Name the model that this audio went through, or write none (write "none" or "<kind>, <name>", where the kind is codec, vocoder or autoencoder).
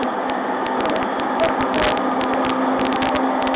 none